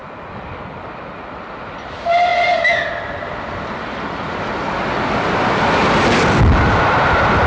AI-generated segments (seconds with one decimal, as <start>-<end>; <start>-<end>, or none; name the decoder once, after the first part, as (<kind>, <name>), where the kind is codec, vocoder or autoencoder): none